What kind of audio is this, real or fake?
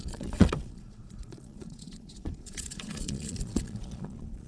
fake